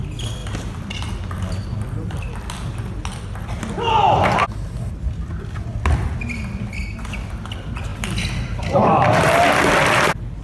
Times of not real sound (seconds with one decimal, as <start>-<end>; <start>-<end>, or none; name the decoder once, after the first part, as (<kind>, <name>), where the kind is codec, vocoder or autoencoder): 0.4-1.1 (vocoder, BigVGAN v2)